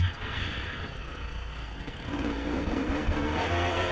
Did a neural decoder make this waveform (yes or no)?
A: yes